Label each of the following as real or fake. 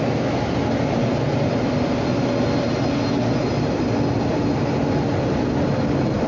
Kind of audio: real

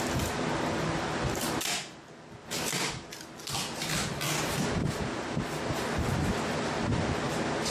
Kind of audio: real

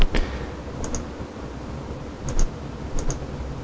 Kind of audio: real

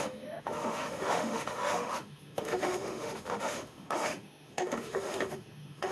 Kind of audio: fake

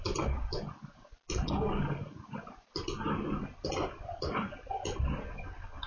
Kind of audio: real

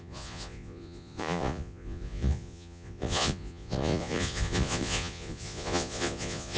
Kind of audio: fake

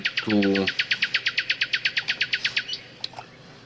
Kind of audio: real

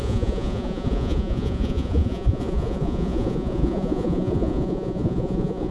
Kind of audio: fake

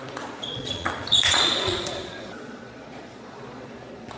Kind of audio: fake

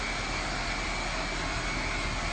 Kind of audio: real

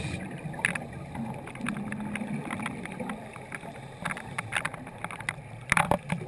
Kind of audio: real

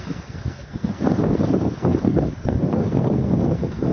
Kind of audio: fake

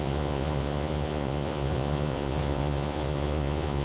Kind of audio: fake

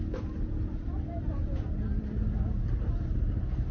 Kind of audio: real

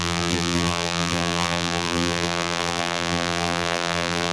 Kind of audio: fake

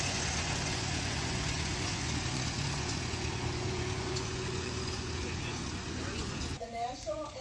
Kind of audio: fake